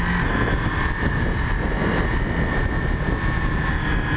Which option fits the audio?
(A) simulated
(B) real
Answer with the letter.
B